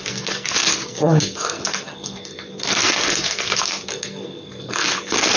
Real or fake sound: fake